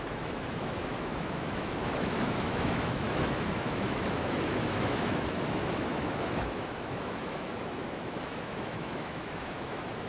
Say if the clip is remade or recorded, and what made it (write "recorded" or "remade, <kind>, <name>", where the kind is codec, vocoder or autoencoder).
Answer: remade, autoencoder, DAC-VAE